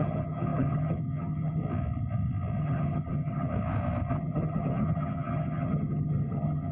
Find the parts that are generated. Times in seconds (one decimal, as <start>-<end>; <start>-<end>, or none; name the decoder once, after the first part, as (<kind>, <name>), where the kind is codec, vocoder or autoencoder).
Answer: 0.0-1.6 (vocoder, HiFi-GAN); 2.6-3.5; 4.1-6.7